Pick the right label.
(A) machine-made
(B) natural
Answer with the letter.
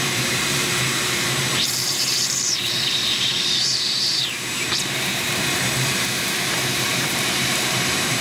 A